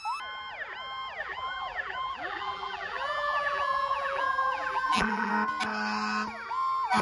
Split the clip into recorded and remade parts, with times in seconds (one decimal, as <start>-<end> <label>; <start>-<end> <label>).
0.0-1.2 recorded; 1.2-5.3 remade; 5.3-7.0 recorded